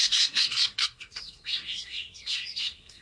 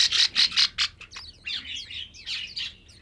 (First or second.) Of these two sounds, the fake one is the first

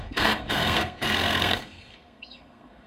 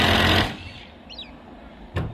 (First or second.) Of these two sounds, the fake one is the first